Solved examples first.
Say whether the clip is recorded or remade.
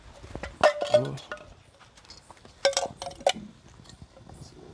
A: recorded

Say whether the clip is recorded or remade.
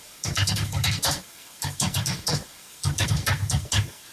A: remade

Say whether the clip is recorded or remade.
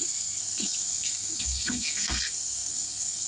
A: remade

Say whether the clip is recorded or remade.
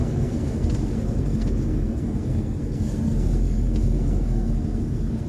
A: remade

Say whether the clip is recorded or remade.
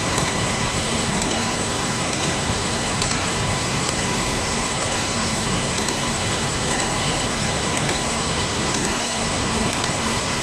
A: remade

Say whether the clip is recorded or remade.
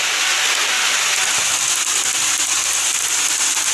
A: recorded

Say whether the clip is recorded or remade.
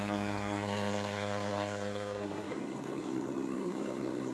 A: remade